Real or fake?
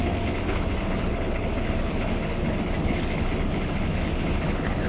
fake